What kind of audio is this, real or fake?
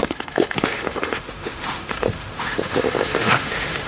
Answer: fake